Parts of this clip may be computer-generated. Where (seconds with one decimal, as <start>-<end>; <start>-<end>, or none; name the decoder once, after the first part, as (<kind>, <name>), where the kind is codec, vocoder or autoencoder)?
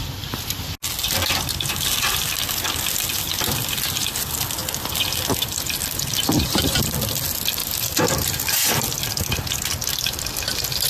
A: 7.6-8.4 (vocoder, BigVGAN v2)